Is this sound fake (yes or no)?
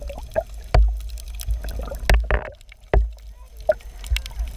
no